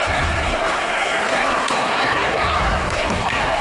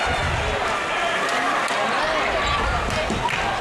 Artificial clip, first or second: first